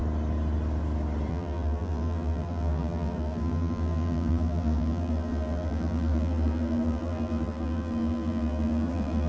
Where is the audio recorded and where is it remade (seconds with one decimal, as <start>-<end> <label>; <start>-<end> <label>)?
0.0-1.3 recorded; 1.3-9.3 remade